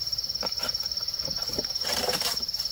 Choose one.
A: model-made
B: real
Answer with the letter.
A